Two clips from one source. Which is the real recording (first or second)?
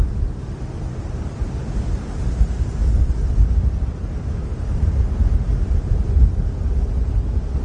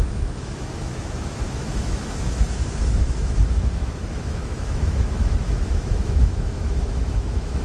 first